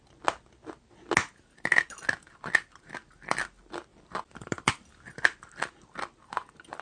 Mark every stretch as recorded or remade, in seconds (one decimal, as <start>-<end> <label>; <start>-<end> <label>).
0.0-3.9 recorded; 3.9-4.7 remade; 4.7-6.8 recorded